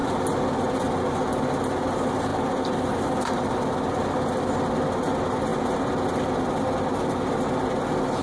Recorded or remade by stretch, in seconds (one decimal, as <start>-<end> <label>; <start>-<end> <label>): 0.0-2.3 recorded; 2.3-3.4 remade; 3.4-8.2 recorded